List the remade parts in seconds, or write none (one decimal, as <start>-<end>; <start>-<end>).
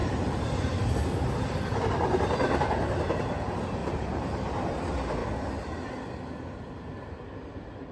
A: 0.0-0.9; 3.8-4.5